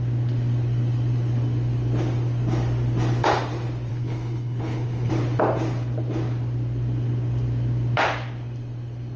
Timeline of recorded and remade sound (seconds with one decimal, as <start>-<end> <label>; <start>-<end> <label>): 0.0-3.9 recorded; 3.9-5.1 remade; 5.1-9.2 recorded